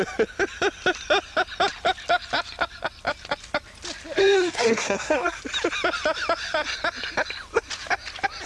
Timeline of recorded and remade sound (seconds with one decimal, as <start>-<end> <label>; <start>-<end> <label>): 0.0-4.2 recorded; 4.2-5.4 remade; 5.4-8.5 recorded